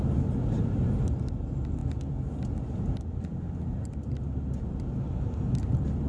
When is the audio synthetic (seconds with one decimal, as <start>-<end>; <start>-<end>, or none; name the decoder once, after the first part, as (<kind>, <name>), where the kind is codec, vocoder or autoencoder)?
none